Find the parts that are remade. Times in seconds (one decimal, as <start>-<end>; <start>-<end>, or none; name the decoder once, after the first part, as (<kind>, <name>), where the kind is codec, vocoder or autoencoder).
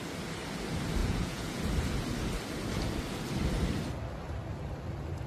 1.0-1.6 (vocoder, Vocos)